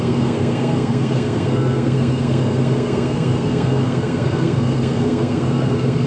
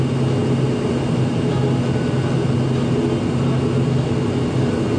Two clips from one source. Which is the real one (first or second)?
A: second